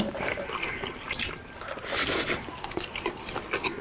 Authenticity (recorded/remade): remade